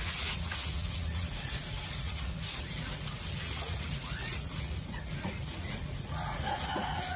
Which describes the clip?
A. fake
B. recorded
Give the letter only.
A